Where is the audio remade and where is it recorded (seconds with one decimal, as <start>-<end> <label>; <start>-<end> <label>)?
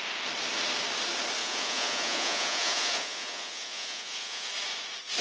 0.0-1.4 recorded; 1.4-4.5 remade; 4.5-5.2 recorded